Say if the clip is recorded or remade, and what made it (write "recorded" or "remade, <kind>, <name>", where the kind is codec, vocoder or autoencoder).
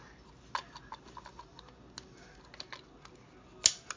recorded